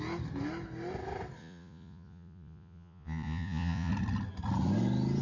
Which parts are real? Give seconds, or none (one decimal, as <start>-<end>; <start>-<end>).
0.0-1.4; 3.9-5.2